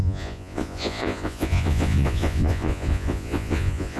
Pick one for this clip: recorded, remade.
remade